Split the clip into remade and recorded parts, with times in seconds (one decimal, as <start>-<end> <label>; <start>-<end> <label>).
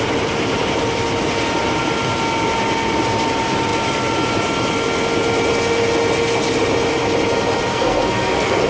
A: 0.0-7.7 recorded; 7.7-8.7 remade